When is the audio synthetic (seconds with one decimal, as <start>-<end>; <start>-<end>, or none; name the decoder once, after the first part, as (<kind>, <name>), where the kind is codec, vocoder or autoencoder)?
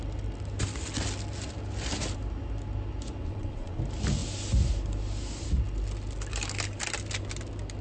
3.2-3.8 (vocoder, WaveNeXt)